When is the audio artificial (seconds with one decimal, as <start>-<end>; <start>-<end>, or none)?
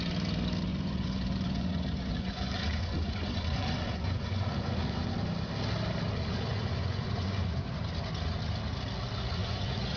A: 0.7-5.1; 6.5-7.8; 9.4-10.0